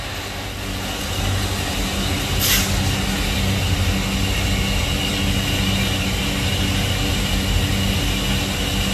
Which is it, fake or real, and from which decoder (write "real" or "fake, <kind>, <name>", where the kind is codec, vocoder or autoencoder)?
real